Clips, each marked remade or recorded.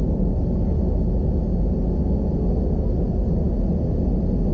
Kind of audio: recorded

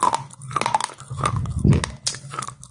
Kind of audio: recorded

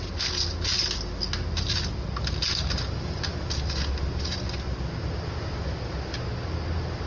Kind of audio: recorded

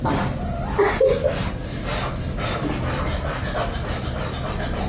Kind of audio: recorded